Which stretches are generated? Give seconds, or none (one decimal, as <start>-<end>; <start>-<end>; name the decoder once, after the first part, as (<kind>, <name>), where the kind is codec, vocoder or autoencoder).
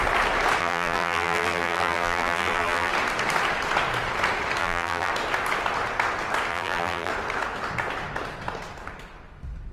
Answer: 0.6-2.9 (vocoder, BigVGAN v2); 4.6-5.1; 6.5-7.1